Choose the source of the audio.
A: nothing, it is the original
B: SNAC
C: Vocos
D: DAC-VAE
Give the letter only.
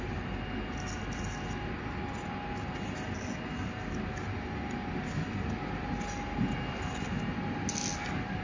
A